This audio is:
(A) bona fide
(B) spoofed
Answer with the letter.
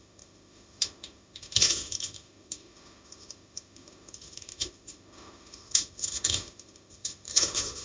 B